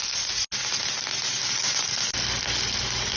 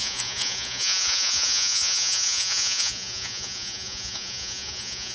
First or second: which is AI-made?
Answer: second